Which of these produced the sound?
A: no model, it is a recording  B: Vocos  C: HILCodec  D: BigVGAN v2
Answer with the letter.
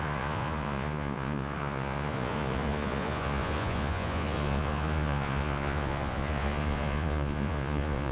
B